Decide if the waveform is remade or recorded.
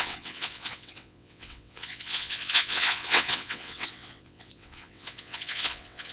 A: remade